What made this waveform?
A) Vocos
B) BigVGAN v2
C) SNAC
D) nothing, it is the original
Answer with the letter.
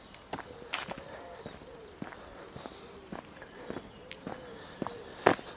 D